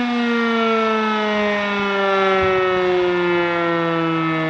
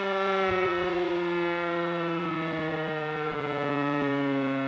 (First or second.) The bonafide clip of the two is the first